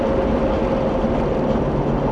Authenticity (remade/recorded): recorded